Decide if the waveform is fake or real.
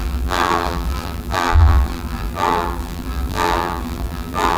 fake